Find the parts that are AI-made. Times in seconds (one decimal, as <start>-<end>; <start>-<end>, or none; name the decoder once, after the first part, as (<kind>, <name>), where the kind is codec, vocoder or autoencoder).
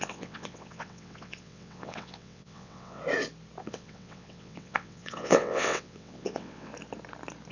0.0-3.0 (vocoder, WaveNeXt); 3.6-6.7